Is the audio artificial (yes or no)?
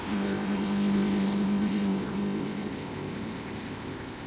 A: yes